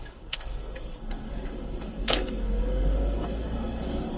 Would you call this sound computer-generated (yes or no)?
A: yes